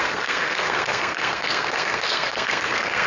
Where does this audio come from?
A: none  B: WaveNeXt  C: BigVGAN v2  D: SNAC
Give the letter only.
D